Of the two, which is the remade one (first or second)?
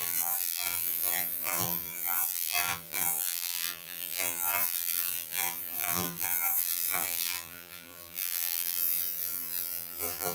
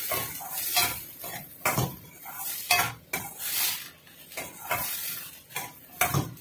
first